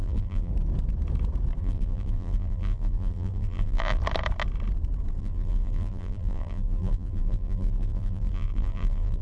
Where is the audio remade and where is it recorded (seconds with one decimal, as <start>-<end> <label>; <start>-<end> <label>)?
0.0-0.5 remade; 0.5-1.6 recorded; 1.6-4.0 remade; 4.0-5.2 recorded; 5.2-9.2 remade